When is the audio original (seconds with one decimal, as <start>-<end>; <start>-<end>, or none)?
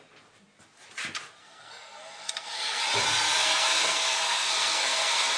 0.0-1.4; 2.8-3.4